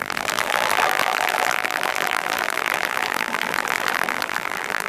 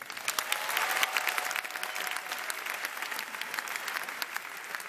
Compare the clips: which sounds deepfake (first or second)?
first